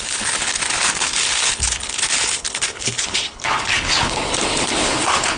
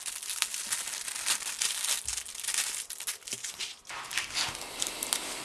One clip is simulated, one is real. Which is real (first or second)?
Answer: second